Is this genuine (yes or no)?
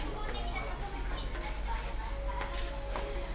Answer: yes